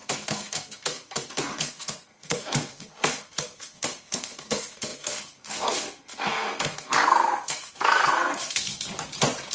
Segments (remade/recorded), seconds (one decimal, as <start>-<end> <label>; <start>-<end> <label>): 0.0-8.7 remade; 8.7-9.5 recorded